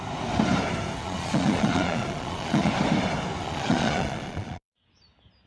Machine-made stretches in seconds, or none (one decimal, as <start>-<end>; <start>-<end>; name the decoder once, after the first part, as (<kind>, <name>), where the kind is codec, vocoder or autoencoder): 1.0-2.7 (vocoder, Vocos); 3.4-4.9